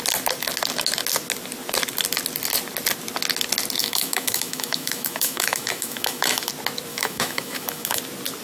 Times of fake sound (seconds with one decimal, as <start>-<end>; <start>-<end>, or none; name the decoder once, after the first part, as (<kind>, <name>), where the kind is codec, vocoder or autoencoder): 3.8-6.5 (autoencoder, DAC-VAE); 6.9-8.0